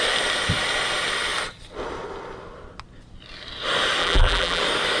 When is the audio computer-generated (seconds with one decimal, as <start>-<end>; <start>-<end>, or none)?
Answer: 4.0-4.6